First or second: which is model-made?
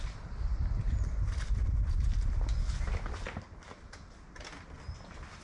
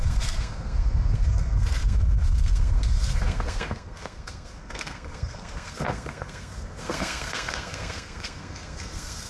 second